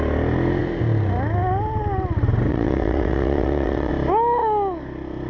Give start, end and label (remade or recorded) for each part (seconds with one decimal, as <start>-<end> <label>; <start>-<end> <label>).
0.0-2.5 recorded; 2.5-3.9 remade; 3.9-5.3 recorded

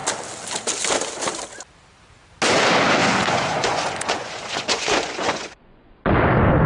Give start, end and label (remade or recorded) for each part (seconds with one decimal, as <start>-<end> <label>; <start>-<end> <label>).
0.0-3.0 recorded; 3.0-6.0 remade; 6.0-6.7 recorded

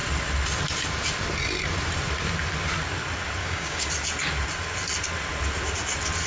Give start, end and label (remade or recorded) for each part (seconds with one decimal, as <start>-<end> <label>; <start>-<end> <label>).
0.0-3.4 recorded; 3.4-3.9 remade; 3.9-6.3 recorded